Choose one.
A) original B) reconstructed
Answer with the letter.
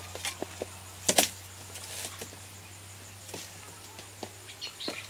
A